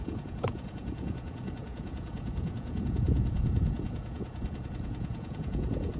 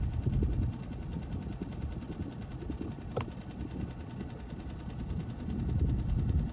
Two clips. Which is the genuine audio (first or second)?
second